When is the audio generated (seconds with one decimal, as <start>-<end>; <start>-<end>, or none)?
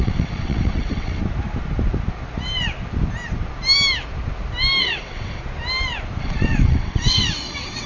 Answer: 0.0-1.2; 4.8-5.4; 6.2-7.9